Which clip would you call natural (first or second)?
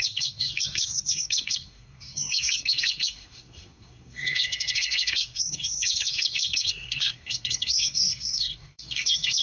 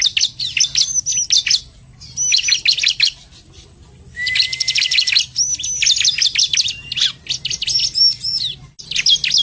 second